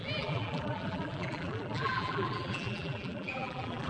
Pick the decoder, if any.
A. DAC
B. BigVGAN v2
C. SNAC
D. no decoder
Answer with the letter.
B